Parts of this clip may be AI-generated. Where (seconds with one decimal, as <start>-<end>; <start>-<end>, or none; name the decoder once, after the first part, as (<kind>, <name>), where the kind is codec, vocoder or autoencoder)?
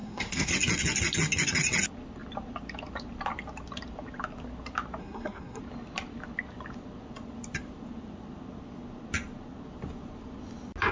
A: 0.0-0.5 (codec, SNAC); 5.0-5.6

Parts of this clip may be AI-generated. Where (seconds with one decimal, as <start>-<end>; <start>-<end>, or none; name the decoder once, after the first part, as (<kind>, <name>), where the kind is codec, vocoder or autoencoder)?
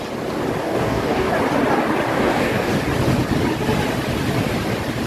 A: 0.6-1.3 (codec, DAC); 2.1-2.7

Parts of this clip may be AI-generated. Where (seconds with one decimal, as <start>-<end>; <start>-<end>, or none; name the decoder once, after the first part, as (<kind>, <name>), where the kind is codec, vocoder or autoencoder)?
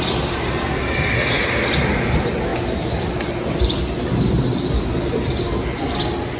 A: none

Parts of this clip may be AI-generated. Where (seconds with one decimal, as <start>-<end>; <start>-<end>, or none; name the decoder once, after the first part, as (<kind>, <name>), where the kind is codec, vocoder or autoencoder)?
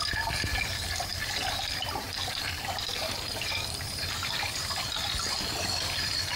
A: 0.0-0.5 (vocoder, BigVGAN v2); 1.1-4.6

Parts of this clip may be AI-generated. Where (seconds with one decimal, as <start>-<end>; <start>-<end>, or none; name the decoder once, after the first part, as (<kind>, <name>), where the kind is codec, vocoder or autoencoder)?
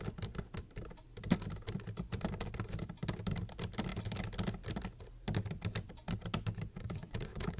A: 6.7-7.6 (vocoder, Vocos)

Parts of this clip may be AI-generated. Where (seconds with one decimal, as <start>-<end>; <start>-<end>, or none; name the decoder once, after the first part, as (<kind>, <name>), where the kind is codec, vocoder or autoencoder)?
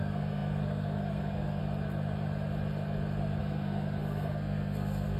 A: 0.0-1.6 (codec, SNAC); 3.4-5.2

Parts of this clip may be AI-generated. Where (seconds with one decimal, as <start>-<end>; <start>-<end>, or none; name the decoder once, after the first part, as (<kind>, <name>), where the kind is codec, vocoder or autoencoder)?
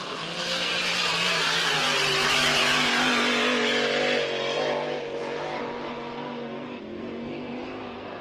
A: 0.0-0.7 (codec, SNAC); 5.6-8.2